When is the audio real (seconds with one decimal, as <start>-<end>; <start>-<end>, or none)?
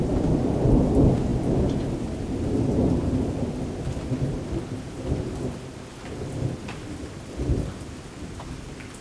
0.0-9.0